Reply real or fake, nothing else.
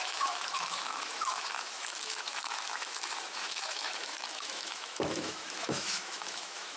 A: fake